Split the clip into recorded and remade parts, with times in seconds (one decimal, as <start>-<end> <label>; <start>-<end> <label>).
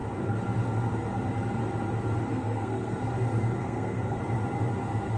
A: 0.0-2.3 recorded; 2.3-3.0 remade; 3.0-3.6 recorded; 3.6-4.2 remade; 4.2-5.2 recorded